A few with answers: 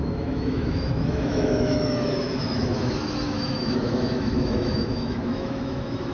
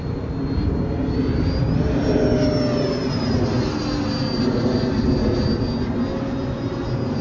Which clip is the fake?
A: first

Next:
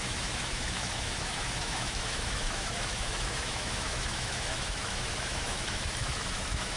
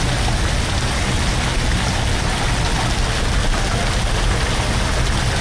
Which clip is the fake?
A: first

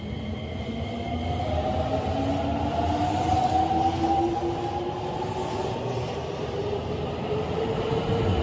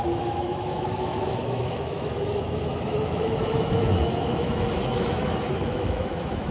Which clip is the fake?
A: second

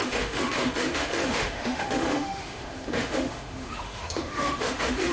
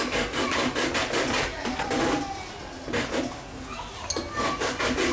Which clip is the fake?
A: first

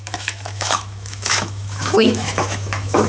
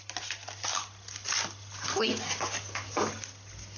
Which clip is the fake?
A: first